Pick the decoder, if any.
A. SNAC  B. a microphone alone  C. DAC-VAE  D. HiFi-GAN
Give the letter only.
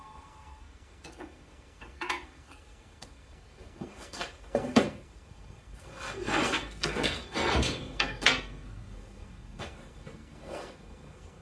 A